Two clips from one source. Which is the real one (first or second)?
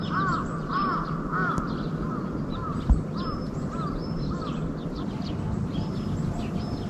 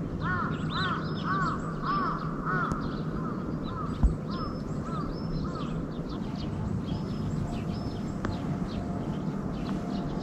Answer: second